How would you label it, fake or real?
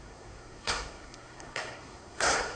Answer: fake